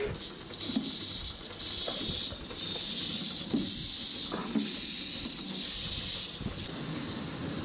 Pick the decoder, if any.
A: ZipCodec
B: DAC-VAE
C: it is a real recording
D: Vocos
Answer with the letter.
C